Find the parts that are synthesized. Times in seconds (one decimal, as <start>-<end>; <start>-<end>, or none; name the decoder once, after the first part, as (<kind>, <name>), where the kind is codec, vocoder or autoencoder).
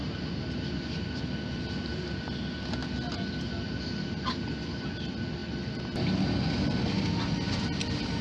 none